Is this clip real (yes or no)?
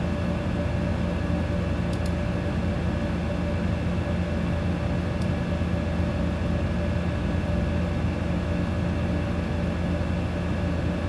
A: yes